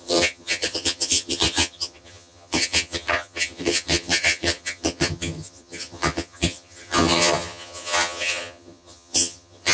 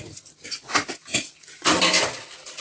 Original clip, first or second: second